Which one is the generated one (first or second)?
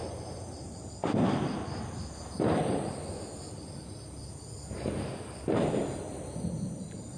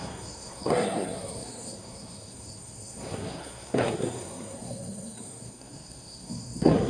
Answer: second